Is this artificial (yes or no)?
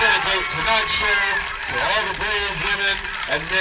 no